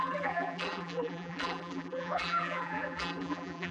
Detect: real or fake fake